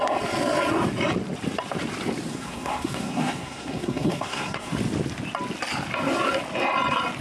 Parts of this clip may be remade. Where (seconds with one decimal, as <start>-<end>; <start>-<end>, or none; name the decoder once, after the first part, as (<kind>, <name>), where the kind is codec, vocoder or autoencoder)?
2.3-4.7 (codec, SNAC)